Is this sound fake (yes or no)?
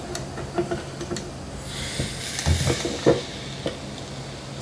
no